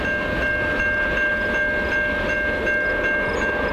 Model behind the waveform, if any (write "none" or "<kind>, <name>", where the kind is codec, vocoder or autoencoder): none